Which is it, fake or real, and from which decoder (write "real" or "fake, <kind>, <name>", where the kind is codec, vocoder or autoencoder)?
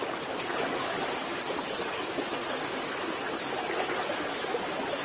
real